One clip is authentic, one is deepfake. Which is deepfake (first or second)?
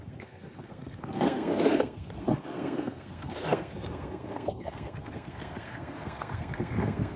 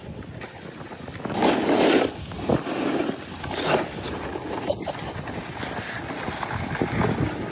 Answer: first